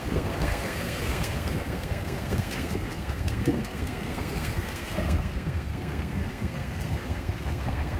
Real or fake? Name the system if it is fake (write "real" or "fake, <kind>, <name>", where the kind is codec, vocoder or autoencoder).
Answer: fake, codec, SNAC